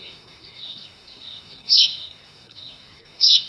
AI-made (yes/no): yes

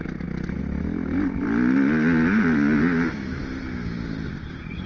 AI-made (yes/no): no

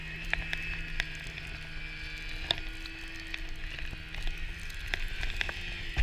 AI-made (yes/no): no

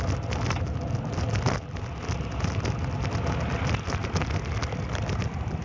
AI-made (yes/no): no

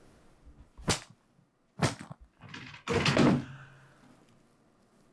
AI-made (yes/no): no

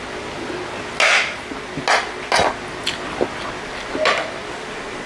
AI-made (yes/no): no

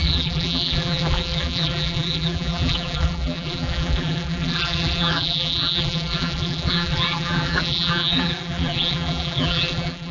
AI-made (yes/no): yes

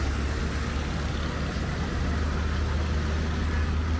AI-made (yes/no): no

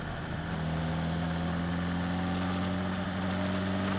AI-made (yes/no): no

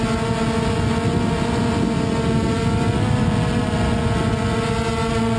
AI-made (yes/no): no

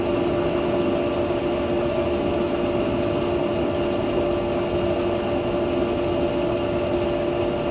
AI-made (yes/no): no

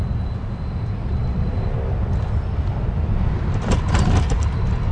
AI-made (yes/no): no